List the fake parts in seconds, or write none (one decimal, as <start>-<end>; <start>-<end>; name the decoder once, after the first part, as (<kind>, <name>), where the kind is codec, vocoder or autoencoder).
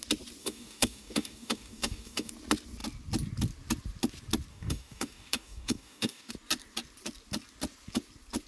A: 0.4-2.3 (codec, DAC); 4.5-6.3